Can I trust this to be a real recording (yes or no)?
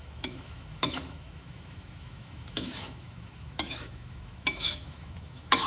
no